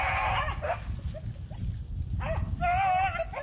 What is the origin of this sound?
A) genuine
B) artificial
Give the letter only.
A